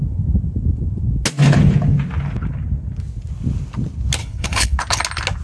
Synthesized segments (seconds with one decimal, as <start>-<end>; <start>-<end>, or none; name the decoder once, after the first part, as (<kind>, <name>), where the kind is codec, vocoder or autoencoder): 4.2-4.8 (codec, HILCodec)